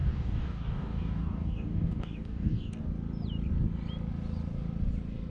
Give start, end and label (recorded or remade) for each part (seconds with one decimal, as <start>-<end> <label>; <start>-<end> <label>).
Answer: 0.0-2.8 remade; 2.8-5.3 recorded